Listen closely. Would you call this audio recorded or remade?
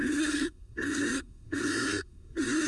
remade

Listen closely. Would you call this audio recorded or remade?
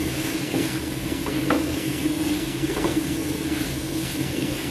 remade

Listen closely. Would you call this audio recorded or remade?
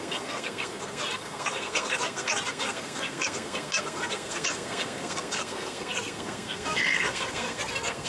remade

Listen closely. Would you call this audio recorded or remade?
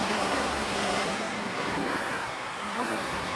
remade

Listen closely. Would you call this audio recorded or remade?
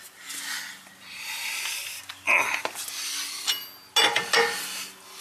recorded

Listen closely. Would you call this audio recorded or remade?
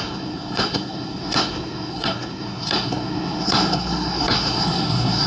remade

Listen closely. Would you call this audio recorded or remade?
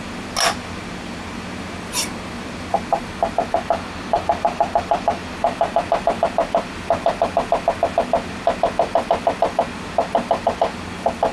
recorded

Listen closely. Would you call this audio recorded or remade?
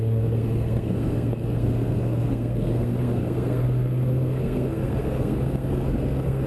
remade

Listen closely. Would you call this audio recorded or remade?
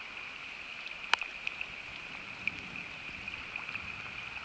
recorded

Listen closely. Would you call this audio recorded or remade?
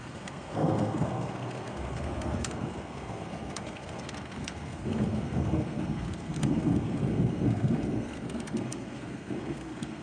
remade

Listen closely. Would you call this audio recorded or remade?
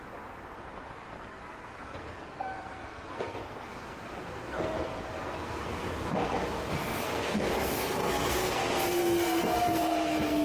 remade